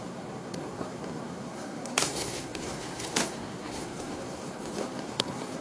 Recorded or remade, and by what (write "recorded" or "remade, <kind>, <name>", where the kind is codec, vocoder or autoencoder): remade, codec, SNAC